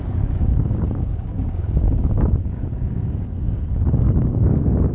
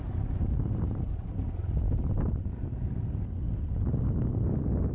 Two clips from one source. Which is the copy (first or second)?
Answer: first